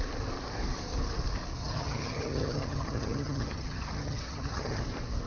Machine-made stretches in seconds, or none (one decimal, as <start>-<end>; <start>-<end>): 1.6-4.8